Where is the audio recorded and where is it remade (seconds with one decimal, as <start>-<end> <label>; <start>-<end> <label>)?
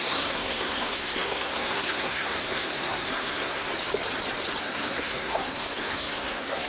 0.0-3.7 remade; 3.7-4.6 recorded; 4.6-6.7 remade